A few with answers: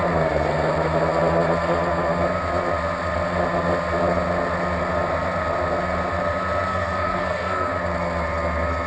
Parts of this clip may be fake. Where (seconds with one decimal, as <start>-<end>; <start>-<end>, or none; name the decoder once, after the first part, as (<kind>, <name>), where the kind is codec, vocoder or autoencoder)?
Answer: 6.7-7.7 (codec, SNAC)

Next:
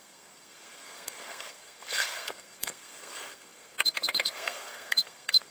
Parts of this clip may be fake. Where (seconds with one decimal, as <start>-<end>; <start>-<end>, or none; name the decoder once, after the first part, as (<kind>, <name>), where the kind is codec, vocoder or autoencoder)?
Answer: 0.0-5.5 (codec, SNAC)

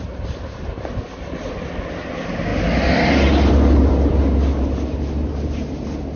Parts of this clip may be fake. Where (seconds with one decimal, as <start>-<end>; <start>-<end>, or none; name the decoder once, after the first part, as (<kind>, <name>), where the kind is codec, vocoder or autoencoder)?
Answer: none

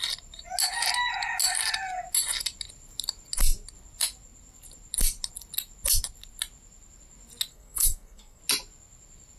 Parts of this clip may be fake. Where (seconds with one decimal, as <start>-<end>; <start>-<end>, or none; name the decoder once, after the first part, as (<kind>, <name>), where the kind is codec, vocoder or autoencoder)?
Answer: 7.5-8.4 (codec, SNAC)